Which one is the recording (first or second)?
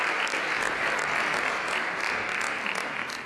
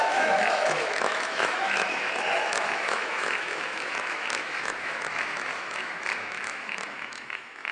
first